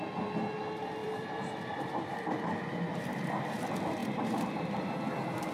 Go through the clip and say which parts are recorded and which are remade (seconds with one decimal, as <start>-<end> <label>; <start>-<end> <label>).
0.0-1.0 recorded; 1.0-3.3 remade; 3.3-4.0 recorded; 4.0-4.9 remade; 4.9-5.5 recorded